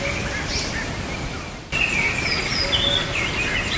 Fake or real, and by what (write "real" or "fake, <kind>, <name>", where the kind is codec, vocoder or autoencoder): real